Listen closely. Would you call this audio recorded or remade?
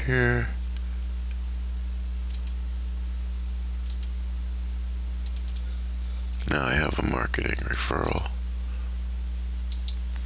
recorded